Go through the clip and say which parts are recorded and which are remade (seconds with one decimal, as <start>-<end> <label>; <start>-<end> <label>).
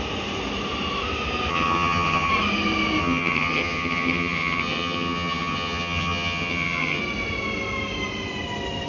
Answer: 0.0-1.5 recorded; 1.5-2.3 remade; 2.3-3.0 recorded; 3.0-7.0 remade; 7.0-8.9 recorded